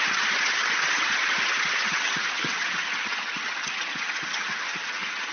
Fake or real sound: fake